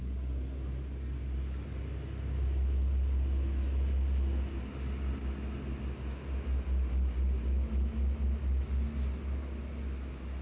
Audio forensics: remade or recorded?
recorded